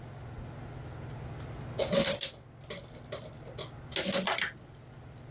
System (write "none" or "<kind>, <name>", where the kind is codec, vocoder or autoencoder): none